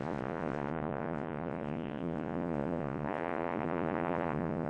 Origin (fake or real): fake